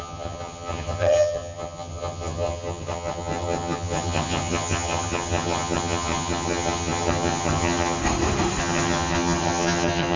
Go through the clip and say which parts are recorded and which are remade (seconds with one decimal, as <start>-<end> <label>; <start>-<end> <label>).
0.0-8.0 remade; 8.0-8.6 recorded; 8.6-10.2 remade